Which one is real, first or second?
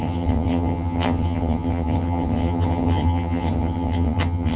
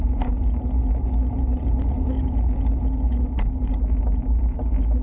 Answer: second